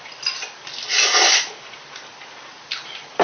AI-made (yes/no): no